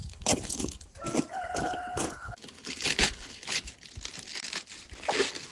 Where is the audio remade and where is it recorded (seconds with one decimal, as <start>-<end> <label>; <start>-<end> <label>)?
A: 0.0-0.9 remade; 0.9-1.3 recorded; 1.3-3.7 remade; 3.7-5.5 recorded